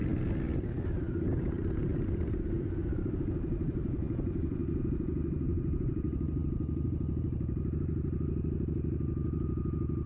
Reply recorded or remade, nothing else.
recorded